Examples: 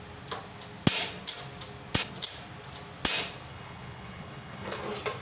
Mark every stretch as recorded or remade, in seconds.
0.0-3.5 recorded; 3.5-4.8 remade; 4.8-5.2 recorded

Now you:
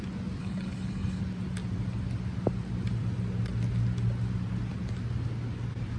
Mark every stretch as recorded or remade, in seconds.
0.0-0.4 recorded; 0.4-1.2 remade; 1.2-6.0 recorded

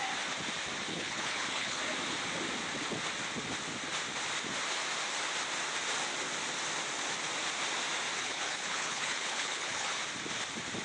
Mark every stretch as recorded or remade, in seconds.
0.0-0.9 recorded; 0.9-1.8 remade; 1.8-8.2 recorded; 8.2-10.0 remade; 10.0-10.8 recorded

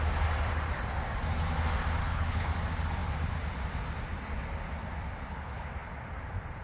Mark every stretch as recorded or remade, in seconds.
0.0-2.0 recorded; 2.0-2.5 remade; 2.5-6.6 recorded

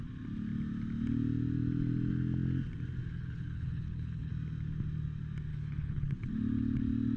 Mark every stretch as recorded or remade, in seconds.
0.0-3.1 recorded; 3.1-4.3 remade; 4.3-5.5 recorded; 5.5-6.3 remade; 6.3-7.2 recorded

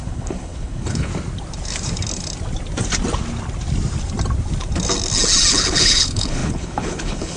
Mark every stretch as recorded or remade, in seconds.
0.0-1.1 remade; 1.1-5.5 recorded; 5.5-7.4 remade

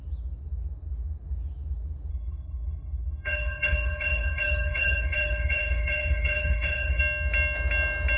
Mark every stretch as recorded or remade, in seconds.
0.0-2.1 recorded; 2.1-7.0 remade; 7.0-8.2 recorded